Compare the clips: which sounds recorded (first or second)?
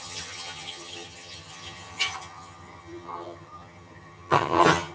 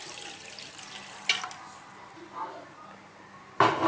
second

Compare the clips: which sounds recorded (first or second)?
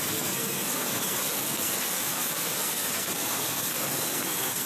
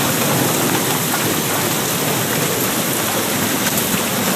second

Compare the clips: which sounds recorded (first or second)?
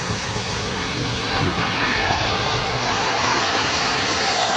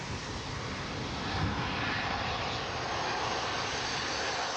second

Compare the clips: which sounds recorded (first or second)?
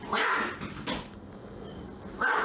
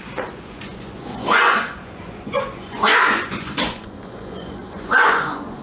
first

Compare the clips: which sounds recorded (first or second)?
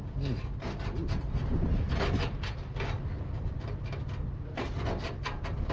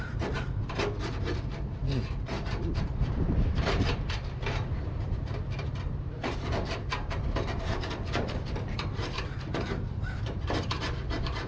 first